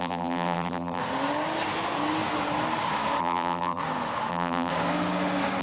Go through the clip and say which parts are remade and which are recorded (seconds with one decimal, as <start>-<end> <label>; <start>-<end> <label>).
0.0-1.0 remade; 1.0-3.2 recorded; 3.2-3.8 remade; 3.8-4.3 recorded; 4.3-4.7 remade; 4.7-5.6 recorded

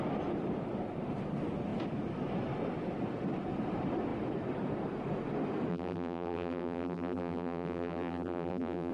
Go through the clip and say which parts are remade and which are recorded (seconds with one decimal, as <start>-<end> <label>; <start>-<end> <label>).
0.0-5.7 recorded; 5.7-8.9 remade

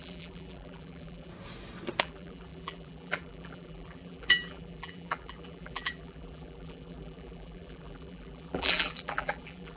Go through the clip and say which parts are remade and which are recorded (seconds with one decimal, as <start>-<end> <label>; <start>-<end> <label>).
0.0-1.3 remade; 1.3-2.0 recorded; 2.0-9.8 remade